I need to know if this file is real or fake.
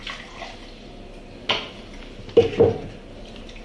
real